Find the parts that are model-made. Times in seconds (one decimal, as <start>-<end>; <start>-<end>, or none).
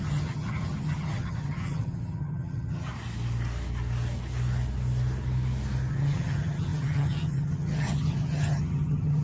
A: 0.0-2.9; 5.9-9.2